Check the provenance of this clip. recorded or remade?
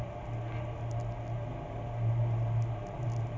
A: recorded